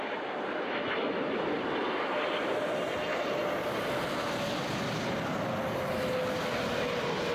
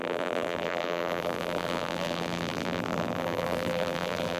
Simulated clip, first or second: second